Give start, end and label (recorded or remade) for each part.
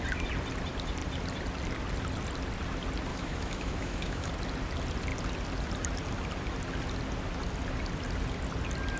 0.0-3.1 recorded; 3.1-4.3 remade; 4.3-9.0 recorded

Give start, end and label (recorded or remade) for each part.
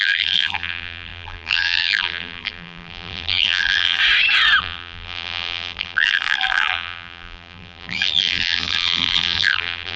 0.0-4.0 remade; 4.0-4.6 recorded; 4.6-10.0 remade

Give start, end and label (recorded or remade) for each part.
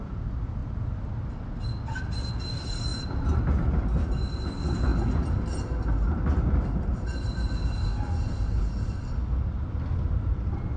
0.0-10.8 recorded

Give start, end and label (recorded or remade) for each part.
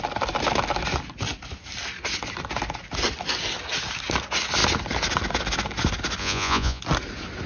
0.0-6.2 recorded; 6.2-6.8 remade; 6.8-7.5 recorded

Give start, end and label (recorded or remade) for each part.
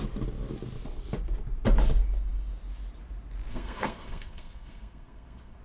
0.0-3.5 recorded; 3.5-5.6 remade